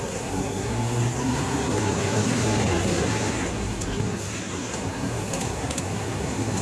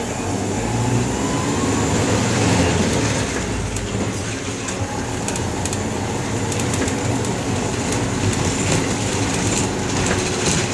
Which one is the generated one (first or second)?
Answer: first